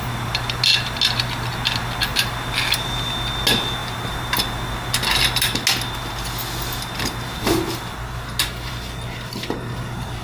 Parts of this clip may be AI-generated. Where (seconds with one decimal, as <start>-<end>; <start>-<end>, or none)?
none